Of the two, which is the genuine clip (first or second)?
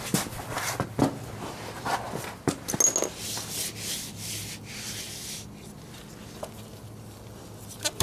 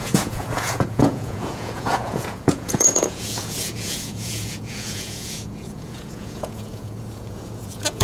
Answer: first